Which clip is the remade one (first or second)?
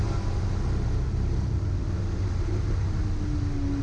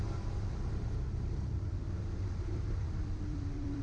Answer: second